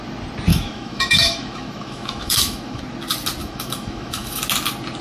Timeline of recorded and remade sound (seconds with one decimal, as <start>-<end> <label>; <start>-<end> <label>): 0.0-0.5 recorded; 0.5-2.8 remade; 2.8-3.4 recorded; 3.4-4.4 remade; 4.4-5.0 recorded